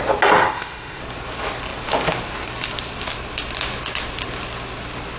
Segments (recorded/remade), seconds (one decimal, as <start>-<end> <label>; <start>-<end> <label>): 0.0-0.4 recorded; 0.4-1.0 remade; 1.0-5.2 recorded